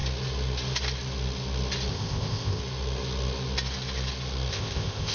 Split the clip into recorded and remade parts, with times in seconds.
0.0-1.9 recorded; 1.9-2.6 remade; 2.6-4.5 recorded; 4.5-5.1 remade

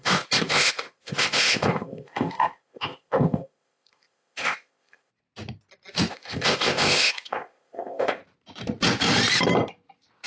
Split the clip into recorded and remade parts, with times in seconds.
0.0-5.1 remade; 5.1-6.1 recorded; 6.1-8.2 remade; 8.2-10.3 recorded

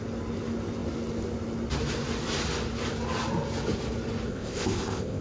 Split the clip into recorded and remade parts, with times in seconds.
0.0-4.3 recorded; 4.3-5.2 remade

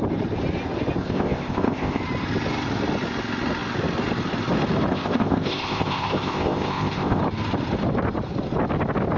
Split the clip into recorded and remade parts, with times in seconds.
0.0-1.0 recorded; 1.0-2.0 remade; 2.0-4.9 recorded; 4.9-7.2 remade; 7.2-9.2 recorded

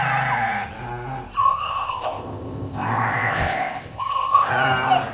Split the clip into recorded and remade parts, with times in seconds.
0.0-1.4 recorded; 1.4-4.5 remade; 4.5-5.1 recorded